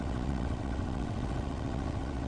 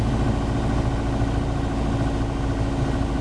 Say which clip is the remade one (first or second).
first